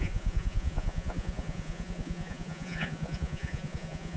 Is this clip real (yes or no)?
no